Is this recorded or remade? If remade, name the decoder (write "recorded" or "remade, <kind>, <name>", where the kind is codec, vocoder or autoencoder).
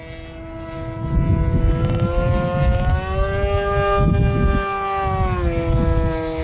recorded